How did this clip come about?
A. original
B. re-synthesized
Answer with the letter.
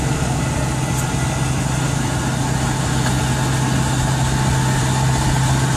A